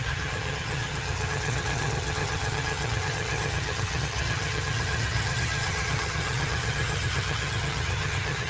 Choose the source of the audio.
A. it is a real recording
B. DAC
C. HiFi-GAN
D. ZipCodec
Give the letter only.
C